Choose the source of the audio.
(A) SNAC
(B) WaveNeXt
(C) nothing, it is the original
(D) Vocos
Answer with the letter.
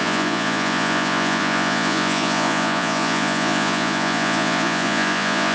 D